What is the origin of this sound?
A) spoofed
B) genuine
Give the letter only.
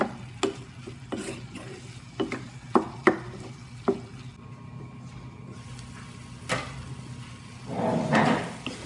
B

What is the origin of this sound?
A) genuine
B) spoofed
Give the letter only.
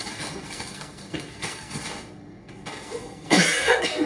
B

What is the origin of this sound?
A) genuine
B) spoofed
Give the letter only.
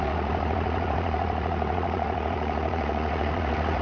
B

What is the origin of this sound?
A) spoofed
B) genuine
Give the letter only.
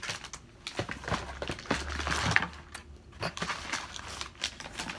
B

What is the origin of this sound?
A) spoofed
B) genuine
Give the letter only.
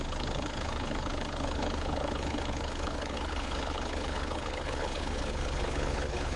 A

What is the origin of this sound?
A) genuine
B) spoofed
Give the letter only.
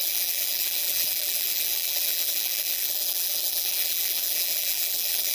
B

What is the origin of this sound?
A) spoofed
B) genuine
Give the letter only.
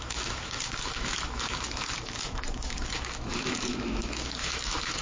A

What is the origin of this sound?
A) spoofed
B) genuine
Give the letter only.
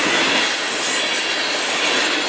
B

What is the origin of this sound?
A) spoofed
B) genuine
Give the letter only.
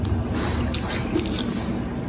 B